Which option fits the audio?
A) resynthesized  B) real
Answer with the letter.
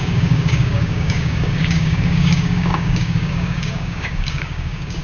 A